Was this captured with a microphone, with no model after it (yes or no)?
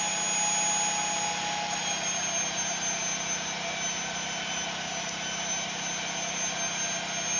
yes